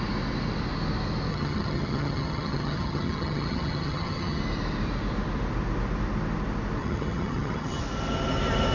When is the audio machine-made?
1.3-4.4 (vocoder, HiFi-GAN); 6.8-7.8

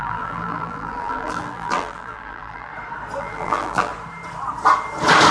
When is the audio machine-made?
0.0-2.7 (vocoder, BigVGAN v2); 3.2-3.9

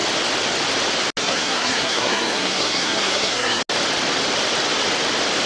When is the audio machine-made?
1.2-3.6 (codec, SNAC)